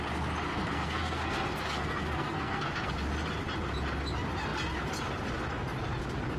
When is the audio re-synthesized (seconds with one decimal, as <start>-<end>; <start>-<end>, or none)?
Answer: 0.5-2.9